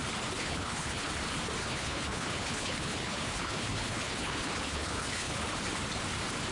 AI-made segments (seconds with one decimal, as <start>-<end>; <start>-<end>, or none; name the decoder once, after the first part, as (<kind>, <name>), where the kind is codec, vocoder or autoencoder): 0.4-1.1 (codec, HILCodec); 1.6-5.5